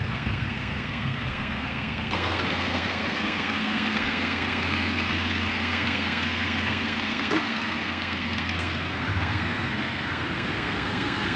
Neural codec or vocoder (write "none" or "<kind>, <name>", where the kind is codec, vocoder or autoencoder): codec, SNAC